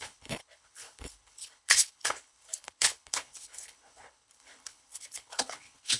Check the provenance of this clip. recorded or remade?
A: remade